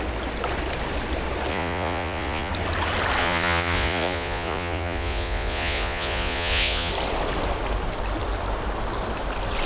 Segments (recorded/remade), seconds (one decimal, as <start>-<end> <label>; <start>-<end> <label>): 0.0-1.5 recorded; 1.5-2.5 remade; 2.5-3.2 recorded; 3.2-6.9 remade; 6.9-9.7 recorded